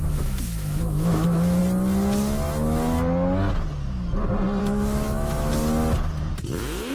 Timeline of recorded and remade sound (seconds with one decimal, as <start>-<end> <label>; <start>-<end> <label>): 0.0-1.6 remade; 1.6-4.6 recorded; 4.6-5.5 remade; 5.5-6.3 recorded; 6.3-6.9 remade